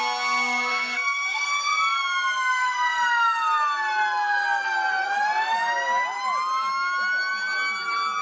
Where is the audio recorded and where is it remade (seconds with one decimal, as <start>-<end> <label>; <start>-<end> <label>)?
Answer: 0.0-0.7 recorded; 0.7-1.5 remade; 1.5-8.2 recorded